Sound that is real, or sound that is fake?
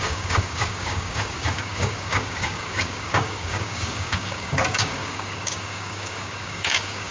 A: fake